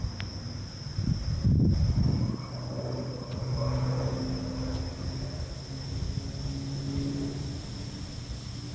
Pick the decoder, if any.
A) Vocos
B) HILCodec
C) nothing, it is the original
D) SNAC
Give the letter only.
C